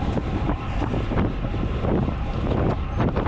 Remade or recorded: recorded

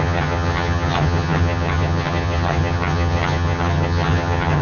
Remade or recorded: remade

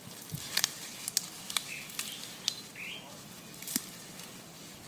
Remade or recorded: recorded